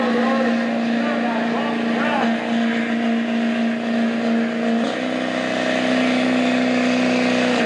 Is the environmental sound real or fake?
real